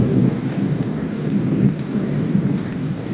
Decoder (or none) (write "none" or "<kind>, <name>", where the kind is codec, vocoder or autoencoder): codec, DAC